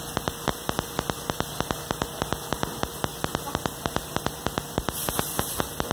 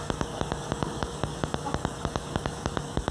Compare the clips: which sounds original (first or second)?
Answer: first